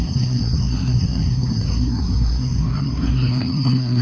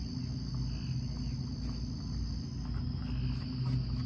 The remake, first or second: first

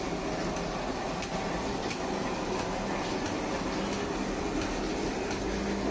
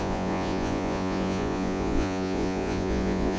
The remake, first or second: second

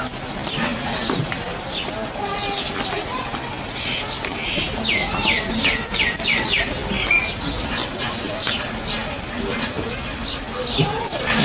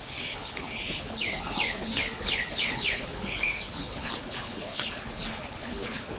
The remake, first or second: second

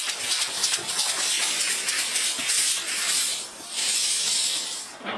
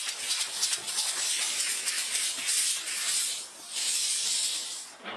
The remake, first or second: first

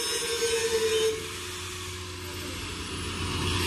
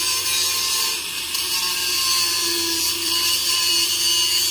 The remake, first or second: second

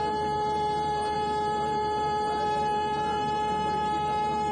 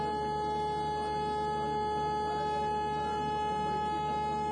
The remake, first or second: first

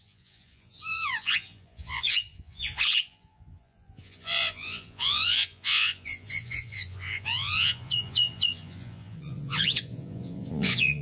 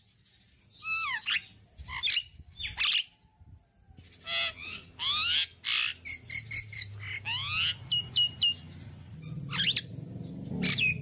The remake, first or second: first